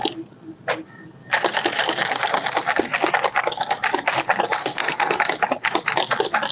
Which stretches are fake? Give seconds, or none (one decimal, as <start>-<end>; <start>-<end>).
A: 4.6-5.2